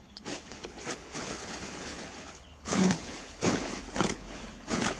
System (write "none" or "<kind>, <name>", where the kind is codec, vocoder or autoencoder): codec, HILCodec